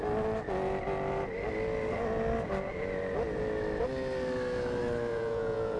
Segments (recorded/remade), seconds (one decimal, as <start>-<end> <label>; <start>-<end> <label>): 0.0-5.1 recorded; 5.1-5.8 remade